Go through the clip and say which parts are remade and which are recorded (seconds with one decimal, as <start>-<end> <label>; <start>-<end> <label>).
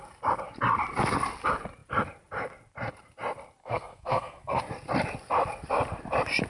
0.0-3.6 recorded; 3.6-4.6 remade; 4.6-6.5 recorded